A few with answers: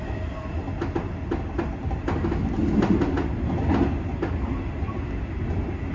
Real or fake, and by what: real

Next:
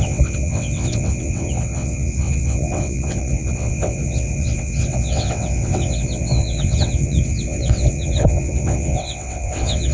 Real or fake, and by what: fake, vocoder, WaveNeXt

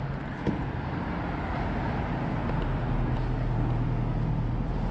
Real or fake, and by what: real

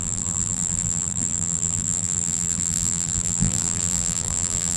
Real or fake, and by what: fake, vocoder, BigVGAN v2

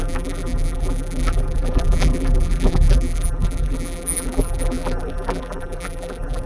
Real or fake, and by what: fake, vocoder, BigVGAN v2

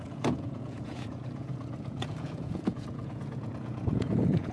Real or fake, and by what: fake, vocoder, Vocos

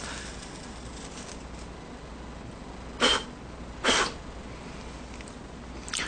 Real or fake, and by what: real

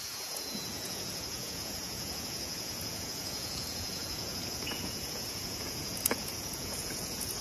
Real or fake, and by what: fake, vocoder, Vocos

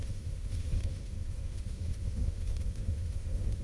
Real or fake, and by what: fake, autoencoder, DAC-VAE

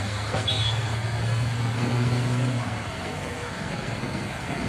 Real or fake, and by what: fake, codec, SNAC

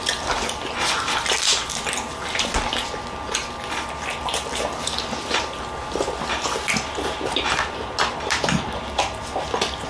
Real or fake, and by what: real